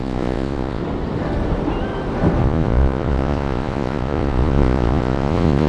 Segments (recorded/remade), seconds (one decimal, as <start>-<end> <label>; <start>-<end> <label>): 0.0-0.8 remade; 0.8-2.4 recorded; 2.4-5.7 remade